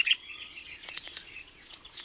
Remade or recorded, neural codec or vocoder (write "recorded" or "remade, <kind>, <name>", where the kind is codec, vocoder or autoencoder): remade, vocoder, Vocos